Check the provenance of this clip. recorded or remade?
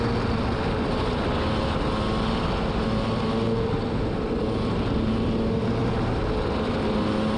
recorded